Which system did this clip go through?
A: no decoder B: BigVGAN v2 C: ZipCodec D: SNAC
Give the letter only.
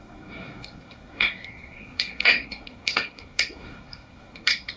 D